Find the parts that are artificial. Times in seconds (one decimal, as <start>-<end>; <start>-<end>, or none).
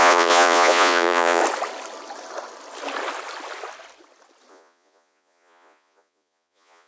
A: 0.0-1.4; 4.5-6.9